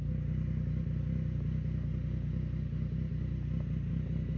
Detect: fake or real real